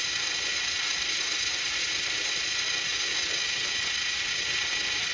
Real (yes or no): yes